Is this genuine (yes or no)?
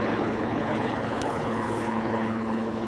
no